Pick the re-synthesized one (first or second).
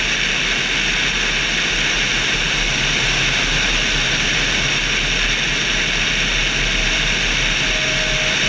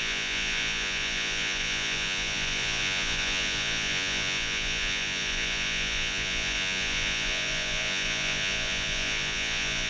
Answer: second